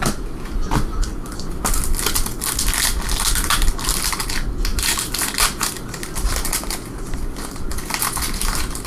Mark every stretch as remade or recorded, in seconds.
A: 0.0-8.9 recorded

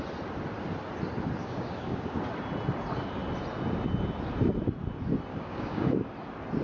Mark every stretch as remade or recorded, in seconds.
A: 0.0-1.4 recorded; 1.4-2.2 remade; 2.2-5.3 recorded; 5.3-6.0 remade; 6.0-6.6 recorded

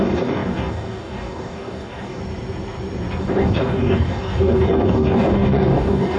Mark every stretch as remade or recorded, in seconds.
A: 0.0-2.2 remade; 2.2-3.2 recorded; 3.2-6.2 remade